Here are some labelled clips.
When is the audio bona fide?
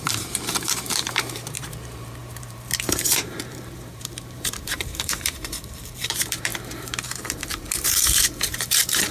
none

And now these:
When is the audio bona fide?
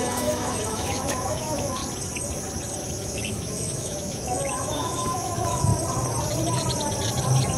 1.8-3.0; 5.7-7.6